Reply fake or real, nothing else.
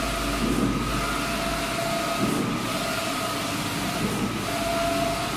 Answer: real